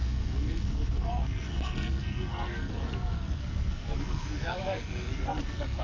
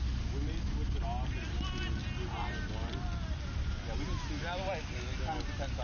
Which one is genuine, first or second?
second